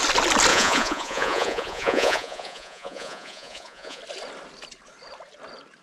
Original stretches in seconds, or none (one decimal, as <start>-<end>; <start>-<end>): 0.0-0.5; 4.0-5.8